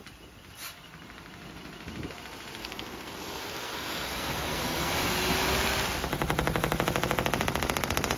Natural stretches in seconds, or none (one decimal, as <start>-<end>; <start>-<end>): 0.0-2.6; 4.9-8.2